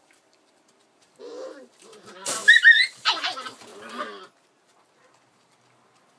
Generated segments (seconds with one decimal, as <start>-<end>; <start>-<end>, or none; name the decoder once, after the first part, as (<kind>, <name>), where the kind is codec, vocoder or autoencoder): 0.0-3.7 (vocoder, BigVGAN v2); 4.8-6.2

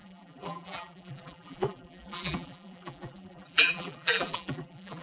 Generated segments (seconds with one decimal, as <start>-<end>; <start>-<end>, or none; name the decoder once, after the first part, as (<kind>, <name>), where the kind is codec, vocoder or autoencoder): 0.0-5.0 (vocoder, BigVGAN v2)